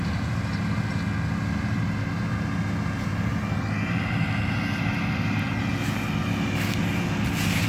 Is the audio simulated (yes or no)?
no